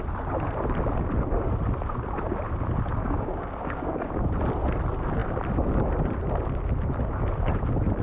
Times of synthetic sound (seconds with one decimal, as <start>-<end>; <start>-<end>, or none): 3.0-4.1